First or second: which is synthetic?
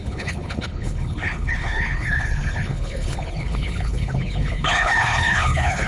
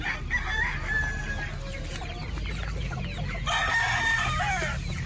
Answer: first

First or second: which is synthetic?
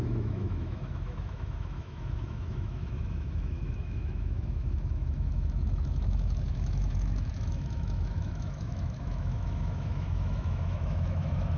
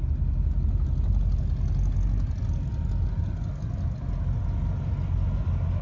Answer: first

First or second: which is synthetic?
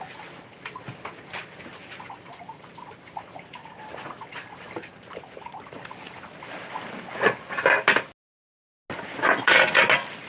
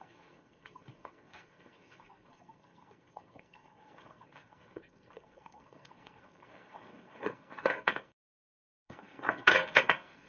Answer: second